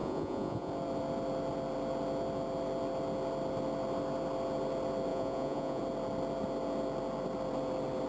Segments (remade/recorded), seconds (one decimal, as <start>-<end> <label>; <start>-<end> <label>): 0.0-0.7 remade; 0.7-5.1 recorded; 5.1-5.8 remade; 5.8-8.1 recorded